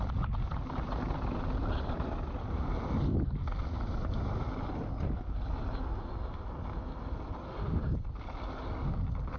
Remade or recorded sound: recorded